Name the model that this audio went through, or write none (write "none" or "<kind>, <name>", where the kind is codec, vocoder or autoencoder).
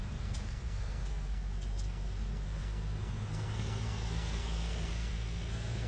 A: codec, SNAC